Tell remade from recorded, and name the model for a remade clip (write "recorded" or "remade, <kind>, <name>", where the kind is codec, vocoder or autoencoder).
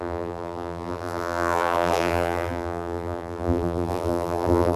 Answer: remade, vocoder, BigVGAN v2